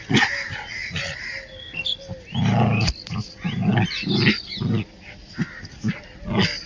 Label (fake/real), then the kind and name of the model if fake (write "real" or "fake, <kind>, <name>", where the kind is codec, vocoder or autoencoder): real